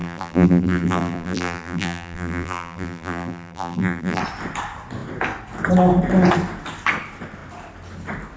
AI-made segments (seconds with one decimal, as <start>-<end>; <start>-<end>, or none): 0.0-4.2